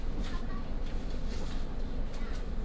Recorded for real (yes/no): yes